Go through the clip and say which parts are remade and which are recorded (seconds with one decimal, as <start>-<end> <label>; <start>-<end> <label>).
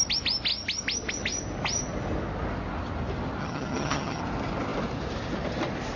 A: 0.0-3.4 recorded; 3.4-4.2 remade; 4.2-6.0 recorded